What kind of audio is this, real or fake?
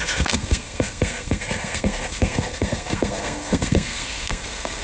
fake